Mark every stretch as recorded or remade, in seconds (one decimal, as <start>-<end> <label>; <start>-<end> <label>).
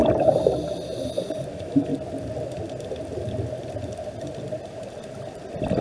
0.0-1.5 recorded; 1.5-1.9 remade; 1.9-5.8 recorded